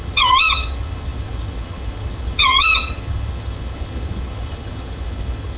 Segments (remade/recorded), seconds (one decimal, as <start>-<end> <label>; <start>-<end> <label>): 0.0-5.6 remade